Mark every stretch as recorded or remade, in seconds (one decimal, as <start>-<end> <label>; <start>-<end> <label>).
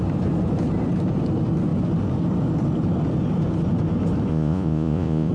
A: 0.0-4.3 recorded; 4.3-5.3 remade